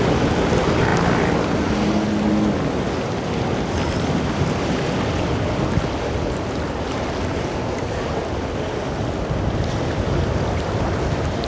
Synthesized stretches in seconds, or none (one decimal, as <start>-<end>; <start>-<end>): none